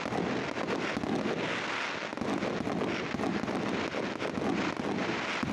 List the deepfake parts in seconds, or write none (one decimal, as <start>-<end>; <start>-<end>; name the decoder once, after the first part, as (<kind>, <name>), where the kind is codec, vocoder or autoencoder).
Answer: none